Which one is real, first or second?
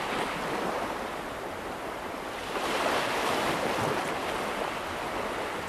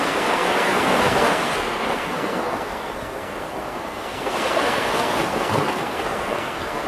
first